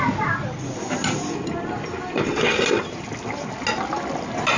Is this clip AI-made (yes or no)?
no